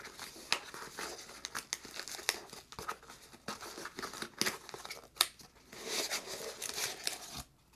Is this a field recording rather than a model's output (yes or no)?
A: yes